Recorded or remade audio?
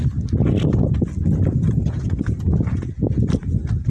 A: recorded